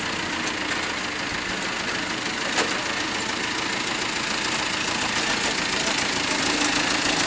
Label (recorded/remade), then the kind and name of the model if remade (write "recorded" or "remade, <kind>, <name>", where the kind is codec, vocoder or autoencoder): recorded